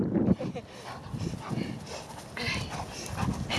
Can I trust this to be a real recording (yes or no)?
yes